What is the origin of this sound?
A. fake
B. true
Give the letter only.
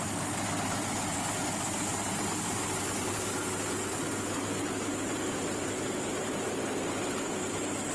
B